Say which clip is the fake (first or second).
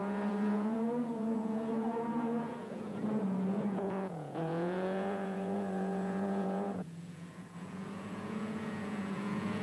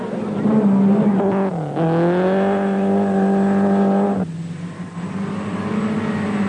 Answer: first